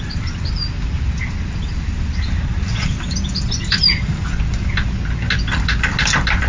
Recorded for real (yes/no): yes